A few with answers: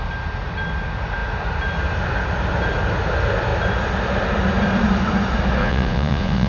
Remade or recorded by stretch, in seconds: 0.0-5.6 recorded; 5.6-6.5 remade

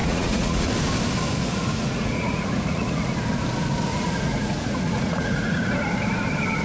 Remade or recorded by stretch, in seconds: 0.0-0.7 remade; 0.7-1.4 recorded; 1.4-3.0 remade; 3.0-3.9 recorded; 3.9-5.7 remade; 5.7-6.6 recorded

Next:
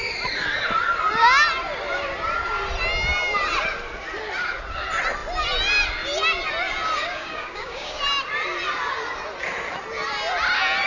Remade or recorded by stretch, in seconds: 0.0-7.0 recorded; 7.0-8.0 remade; 8.0-10.9 recorded